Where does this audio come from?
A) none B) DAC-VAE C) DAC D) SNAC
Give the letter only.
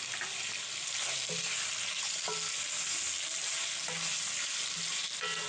A